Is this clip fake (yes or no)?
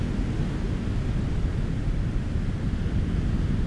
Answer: no